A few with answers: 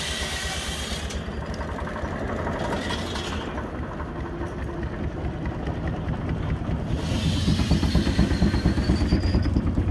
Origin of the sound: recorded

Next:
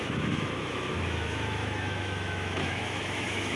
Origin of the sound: remade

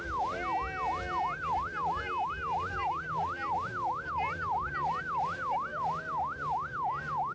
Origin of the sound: recorded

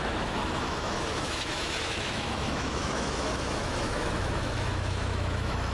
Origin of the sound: remade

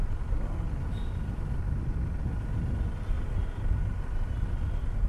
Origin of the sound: recorded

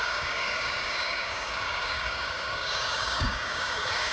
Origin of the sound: remade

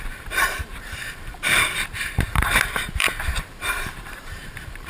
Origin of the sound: remade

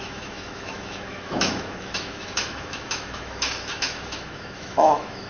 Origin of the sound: remade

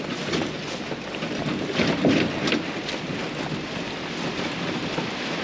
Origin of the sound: recorded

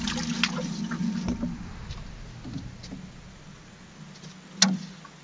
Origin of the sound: recorded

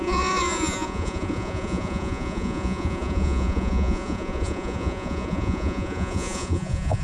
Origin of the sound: remade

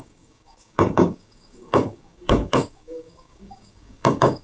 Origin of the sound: remade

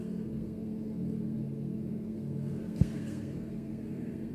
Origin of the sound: remade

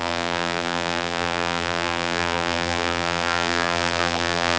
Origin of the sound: remade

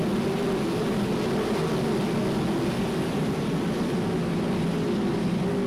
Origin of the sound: recorded